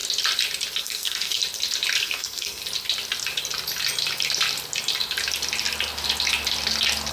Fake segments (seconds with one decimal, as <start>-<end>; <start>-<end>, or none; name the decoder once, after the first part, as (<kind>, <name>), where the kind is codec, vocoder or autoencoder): 0.8-1.4 (codec, SNAC); 2.0-2.6